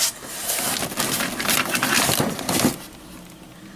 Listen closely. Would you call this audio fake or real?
real